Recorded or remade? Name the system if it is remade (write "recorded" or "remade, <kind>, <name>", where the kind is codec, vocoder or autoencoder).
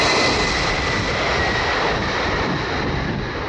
recorded